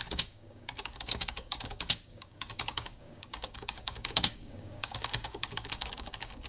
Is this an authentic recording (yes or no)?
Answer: no